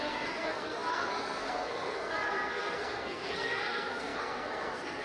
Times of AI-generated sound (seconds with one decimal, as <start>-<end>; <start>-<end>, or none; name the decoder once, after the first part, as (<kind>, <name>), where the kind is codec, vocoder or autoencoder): 0.0-5.0 (codec, SNAC)